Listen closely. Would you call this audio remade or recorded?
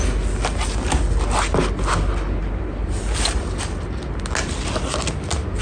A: recorded